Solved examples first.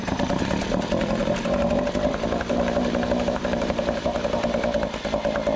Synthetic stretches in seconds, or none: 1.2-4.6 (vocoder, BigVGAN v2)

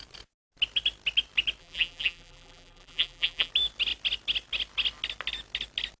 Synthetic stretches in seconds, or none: 1.6-3.5 (vocoder, BigVGAN v2)

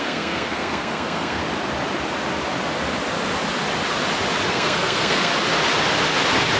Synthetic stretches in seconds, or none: 0.0-1.4 (codec, SNAC); 4.5-5.3

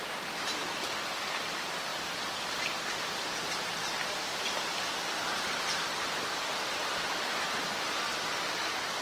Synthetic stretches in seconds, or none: none

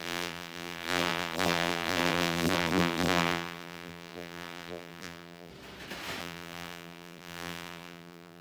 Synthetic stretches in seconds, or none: 0.0-5.5 (vocoder, BigVGAN v2); 6.2-8.4